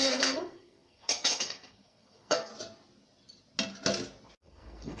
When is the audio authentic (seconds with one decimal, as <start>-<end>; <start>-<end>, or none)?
2.5-4.4